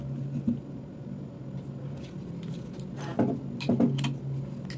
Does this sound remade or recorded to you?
recorded